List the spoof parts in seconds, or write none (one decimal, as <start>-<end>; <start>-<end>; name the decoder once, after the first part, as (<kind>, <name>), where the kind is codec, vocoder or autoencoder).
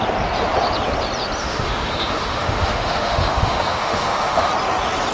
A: 1.4-4.5 (autoencoder, DAC-VAE)